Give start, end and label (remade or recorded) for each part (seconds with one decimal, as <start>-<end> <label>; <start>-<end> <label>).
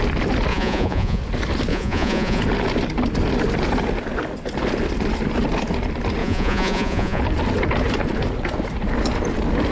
0.0-0.5 recorded; 0.5-1.2 remade; 1.2-1.7 recorded; 1.7-2.4 remade; 2.4-6.2 recorded; 6.2-7.2 remade; 7.2-9.7 recorded